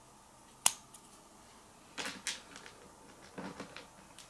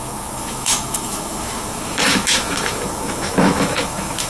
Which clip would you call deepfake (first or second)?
second